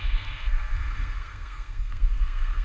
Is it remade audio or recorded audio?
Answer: remade